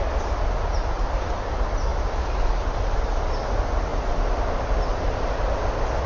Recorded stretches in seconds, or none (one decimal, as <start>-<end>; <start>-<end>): 0.0-6.1